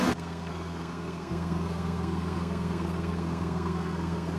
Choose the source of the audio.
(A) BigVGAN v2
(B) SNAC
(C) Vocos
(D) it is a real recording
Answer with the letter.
B